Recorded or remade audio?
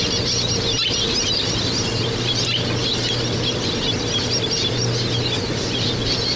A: recorded